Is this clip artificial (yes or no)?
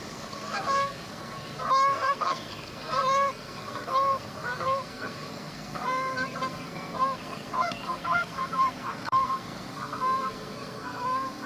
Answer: yes